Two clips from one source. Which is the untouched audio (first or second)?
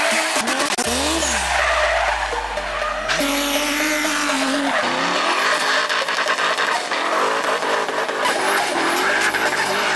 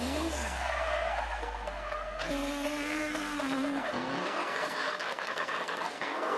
first